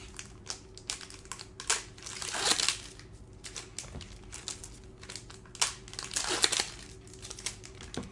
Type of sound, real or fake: real